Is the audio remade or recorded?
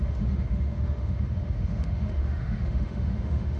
remade